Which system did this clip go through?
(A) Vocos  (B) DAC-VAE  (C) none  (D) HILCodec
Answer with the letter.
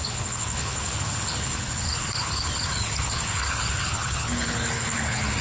D